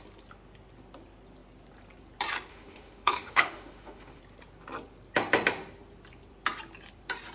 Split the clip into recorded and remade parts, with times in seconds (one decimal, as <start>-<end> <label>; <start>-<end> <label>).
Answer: 0.0-2.5 recorded; 2.5-4.2 remade; 4.2-7.3 recorded